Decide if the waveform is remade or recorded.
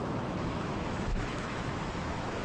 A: remade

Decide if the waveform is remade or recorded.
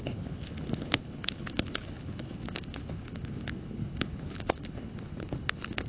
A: remade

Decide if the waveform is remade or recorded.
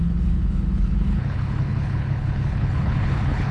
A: remade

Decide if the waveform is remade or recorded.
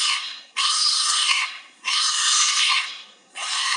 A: remade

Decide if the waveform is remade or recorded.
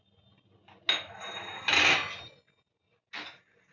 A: recorded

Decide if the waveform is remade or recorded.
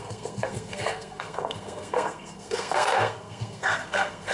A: remade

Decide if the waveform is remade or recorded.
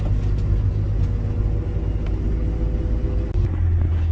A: recorded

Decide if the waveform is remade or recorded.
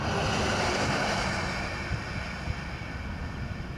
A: recorded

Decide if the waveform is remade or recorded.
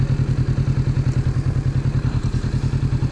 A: recorded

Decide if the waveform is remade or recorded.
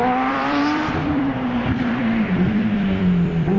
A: remade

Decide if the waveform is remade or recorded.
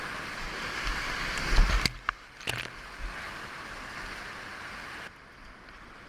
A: recorded